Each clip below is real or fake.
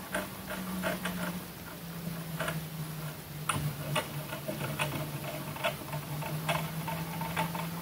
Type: real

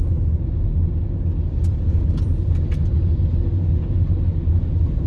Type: real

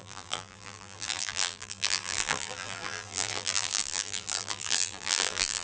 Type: fake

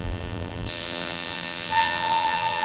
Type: fake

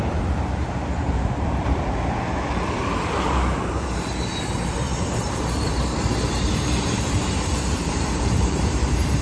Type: fake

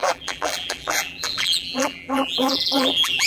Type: fake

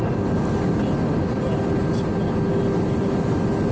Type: real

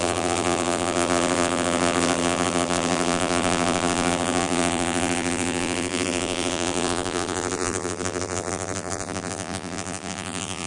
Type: fake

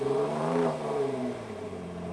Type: fake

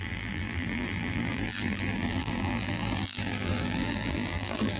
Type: fake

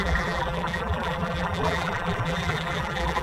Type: fake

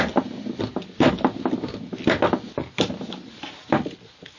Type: real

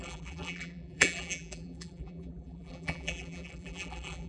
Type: fake